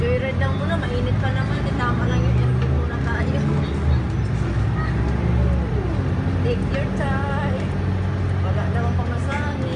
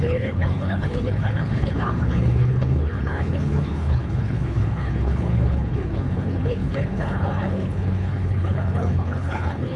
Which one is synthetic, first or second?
second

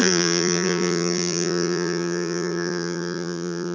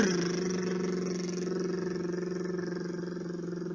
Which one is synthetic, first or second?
first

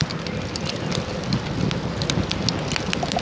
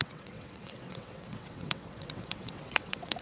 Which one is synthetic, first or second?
second